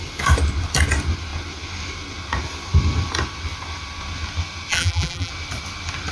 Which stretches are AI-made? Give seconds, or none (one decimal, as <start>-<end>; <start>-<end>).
4.7-5.3